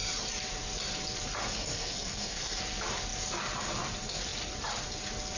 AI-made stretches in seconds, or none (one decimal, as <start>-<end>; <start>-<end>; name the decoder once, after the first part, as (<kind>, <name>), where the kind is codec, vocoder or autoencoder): 1.4-2.6 (codec, SNAC)